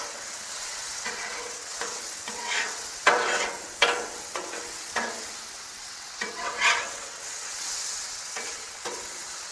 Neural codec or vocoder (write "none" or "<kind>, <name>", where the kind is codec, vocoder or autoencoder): vocoder, WaveNeXt